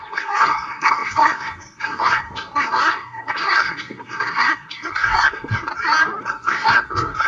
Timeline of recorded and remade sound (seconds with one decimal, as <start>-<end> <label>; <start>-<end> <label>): 0.0-5.7 remade; 5.7-6.2 recorded; 6.2-7.3 remade